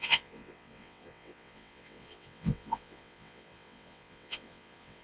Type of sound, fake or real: fake